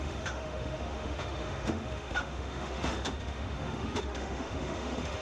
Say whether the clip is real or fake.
fake